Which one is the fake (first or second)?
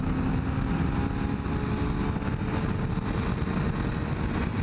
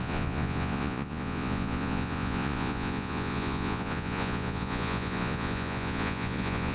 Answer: second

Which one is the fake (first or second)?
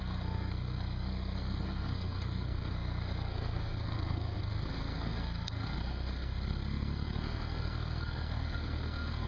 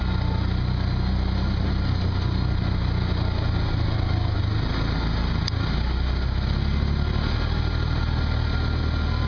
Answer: first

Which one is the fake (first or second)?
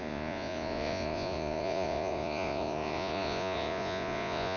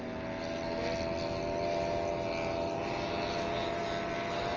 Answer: first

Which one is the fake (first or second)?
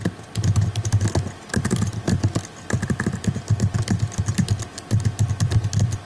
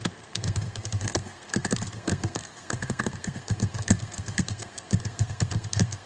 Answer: second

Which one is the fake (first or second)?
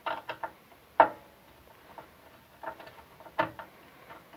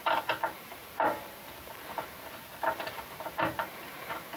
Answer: second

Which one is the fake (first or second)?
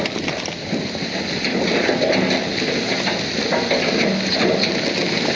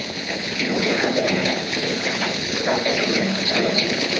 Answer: second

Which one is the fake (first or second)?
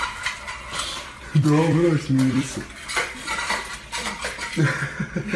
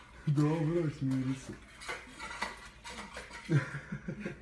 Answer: first